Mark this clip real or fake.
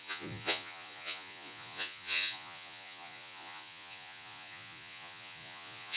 fake